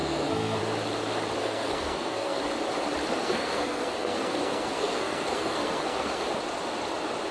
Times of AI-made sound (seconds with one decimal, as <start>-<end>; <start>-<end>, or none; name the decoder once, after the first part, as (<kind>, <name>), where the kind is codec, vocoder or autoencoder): 0.0-0.6 (codec, SNAC); 1.4-2.4; 3.2-6.2